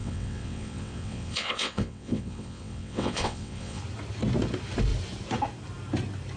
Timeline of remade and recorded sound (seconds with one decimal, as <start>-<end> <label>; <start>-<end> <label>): 0.0-3.8 remade; 3.8-6.4 recorded